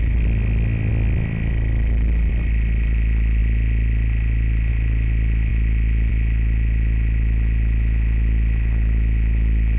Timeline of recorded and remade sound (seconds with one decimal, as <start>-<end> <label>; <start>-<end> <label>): 0.0-9.8 recorded